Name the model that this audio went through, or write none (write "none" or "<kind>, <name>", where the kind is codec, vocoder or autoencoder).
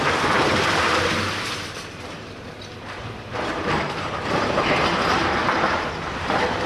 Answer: vocoder, BigVGAN v2